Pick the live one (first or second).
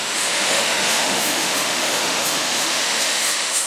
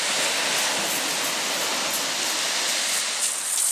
second